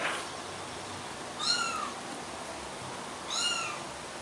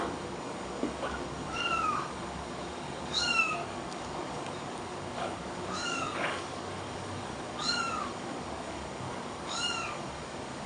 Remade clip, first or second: second